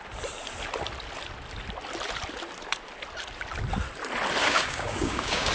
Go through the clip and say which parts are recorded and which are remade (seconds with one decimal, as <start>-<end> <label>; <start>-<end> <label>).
0.0-4.4 recorded; 4.4-5.5 remade